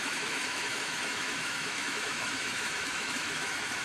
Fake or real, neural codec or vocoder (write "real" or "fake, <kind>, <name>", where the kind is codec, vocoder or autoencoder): fake, autoencoder, DAC-VAE